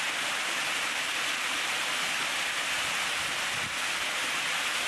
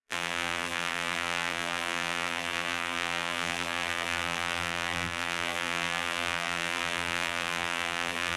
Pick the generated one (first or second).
second